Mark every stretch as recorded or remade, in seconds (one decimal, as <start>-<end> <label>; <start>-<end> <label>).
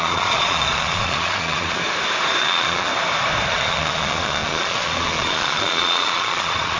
0.0-1.8 remade; 1.8-2.4 recorded; 2.4-2.9 remade; 2.9-3.5 recorded; 3.5-6.8 remade